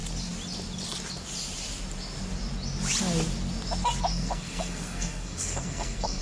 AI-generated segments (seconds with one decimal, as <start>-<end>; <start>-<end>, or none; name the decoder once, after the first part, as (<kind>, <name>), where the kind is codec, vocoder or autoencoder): 4.1-6.2 (codec, SNAC)